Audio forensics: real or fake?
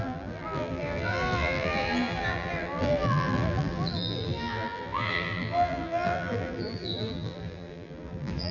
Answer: fake